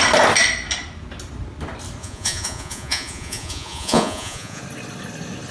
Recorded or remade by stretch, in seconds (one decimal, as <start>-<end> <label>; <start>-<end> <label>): 0.0-2.0 recorded; 2.0-4.6 remade; 4.6-5.5 recorded